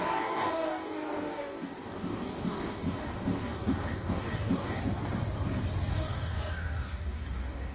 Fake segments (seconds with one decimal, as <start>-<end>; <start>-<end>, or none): 0.0-4.8; 5.9-7.7